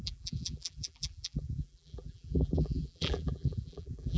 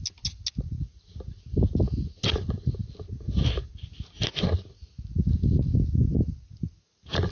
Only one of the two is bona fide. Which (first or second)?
second